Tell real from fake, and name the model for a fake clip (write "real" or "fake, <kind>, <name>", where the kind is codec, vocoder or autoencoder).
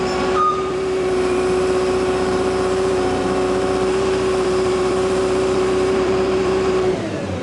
fake, vocoder, BigVGAN v2